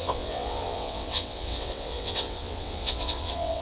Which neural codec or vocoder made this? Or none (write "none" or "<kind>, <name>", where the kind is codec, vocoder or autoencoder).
vocoder, WaveNeXt